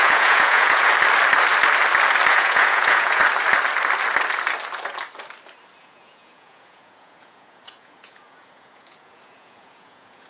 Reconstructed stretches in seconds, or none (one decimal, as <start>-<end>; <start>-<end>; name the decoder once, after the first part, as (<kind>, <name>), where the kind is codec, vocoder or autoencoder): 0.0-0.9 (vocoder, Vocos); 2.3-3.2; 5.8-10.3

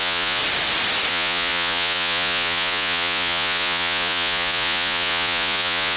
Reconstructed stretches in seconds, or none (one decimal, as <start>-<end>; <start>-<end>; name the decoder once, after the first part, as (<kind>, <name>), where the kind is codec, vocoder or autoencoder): 0.0-0.4 (vocoder, Vocos); 1.1-6.0

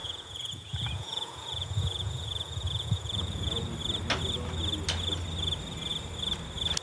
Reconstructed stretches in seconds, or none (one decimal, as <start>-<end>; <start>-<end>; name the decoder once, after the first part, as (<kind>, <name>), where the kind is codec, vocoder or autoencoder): 0.0-3.7 (vocoder, Vocos)